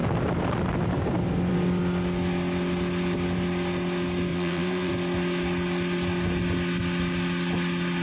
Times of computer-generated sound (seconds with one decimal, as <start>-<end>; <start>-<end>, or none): 4.3-4.9